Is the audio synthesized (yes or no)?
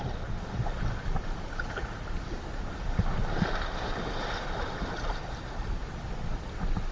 no